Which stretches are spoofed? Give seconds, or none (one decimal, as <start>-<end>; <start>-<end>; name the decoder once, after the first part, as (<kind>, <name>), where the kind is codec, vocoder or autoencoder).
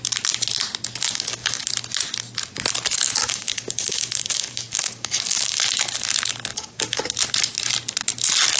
1.0-1.6 (codec, DAC); 3.2-5.7; 6.5-7.0